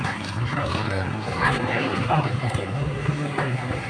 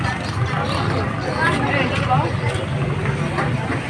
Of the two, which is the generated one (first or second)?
first